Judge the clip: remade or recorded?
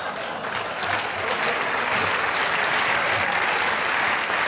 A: recorded